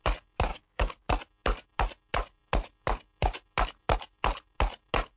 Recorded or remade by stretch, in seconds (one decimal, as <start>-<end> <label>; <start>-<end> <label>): 0.0-0.5 recorded; 0.5-1.1 remade; 1.1-5.2 recorded